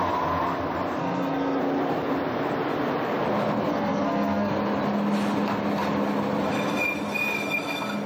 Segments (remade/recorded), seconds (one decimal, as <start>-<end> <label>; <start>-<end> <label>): 0.0-1.0 recorded; 1.0-1.6 remade; 1.6-3.7 recorded; 3.7-4.5 remade; 4.5-8.1 recorded